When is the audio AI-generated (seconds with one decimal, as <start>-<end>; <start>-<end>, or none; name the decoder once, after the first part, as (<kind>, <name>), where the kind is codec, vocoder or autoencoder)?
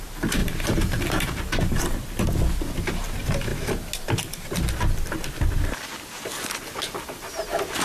0.4-1.8 (vocoder, BigVGAN v2)